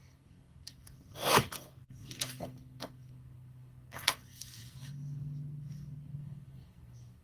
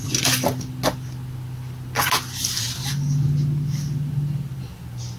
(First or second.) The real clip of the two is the second